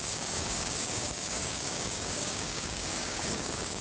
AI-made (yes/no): yes